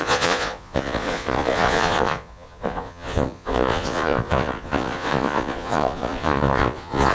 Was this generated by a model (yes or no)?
yes